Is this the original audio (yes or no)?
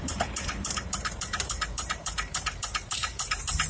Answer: no